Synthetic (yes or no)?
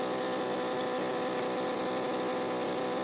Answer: no